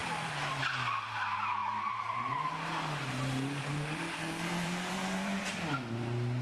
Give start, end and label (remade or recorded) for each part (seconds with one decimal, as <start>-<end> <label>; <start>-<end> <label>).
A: 0.0-0.6 remade; 0.6-1.6 recorded; 1.6-5.4 remade; 5.4-6.4 recorded